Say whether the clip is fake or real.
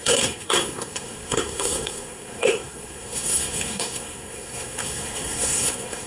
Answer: fake